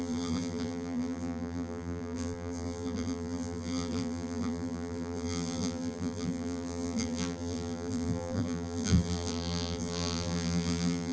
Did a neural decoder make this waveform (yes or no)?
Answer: yes